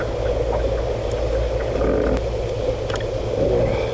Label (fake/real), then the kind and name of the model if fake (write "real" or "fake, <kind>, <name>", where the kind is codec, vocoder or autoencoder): real